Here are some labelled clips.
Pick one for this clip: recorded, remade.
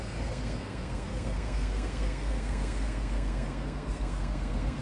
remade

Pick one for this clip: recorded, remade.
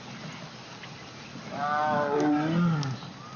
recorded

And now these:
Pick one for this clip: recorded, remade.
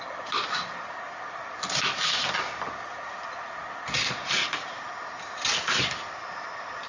recorded